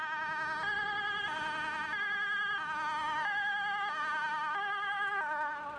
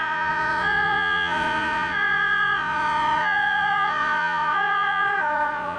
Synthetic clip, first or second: second